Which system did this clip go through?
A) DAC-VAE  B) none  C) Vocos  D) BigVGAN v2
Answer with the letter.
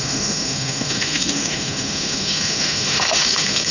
A